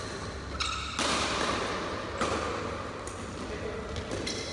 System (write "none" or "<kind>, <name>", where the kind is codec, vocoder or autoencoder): none